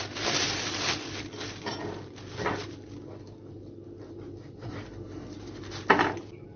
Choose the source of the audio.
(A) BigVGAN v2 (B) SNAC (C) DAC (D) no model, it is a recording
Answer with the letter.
D